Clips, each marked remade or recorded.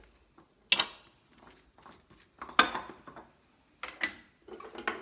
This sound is recorded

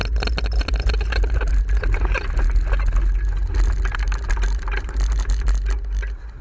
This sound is recorded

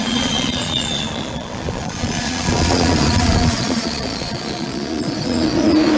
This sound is remade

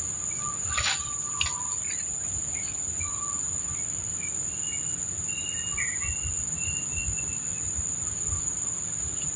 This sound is recorded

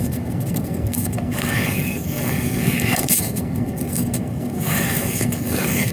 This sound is remade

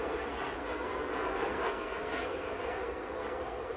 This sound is remade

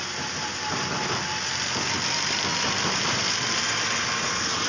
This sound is recorded